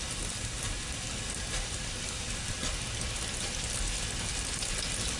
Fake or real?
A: real